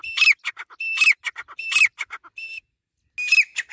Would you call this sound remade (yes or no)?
no